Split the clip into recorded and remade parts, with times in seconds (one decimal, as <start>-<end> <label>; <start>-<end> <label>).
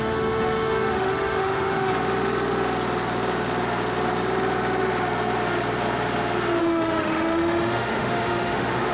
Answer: 0.0-1.9 remade; 1.9-6.6 recorded; 6.6-8.9 remade